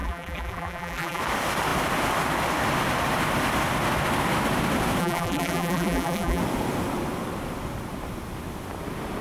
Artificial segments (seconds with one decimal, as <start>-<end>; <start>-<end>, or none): 0.0-1.2; 5.0-6.4